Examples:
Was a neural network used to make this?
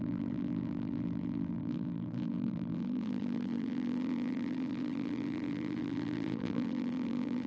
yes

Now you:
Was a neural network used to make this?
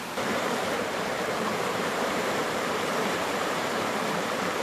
yes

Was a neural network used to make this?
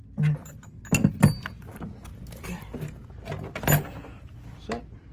no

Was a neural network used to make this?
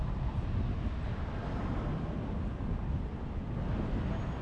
no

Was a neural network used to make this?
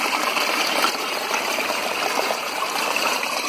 yes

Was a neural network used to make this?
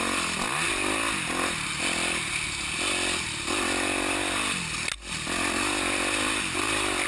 no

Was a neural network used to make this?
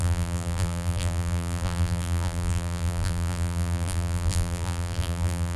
yes